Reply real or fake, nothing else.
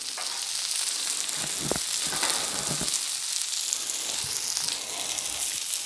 real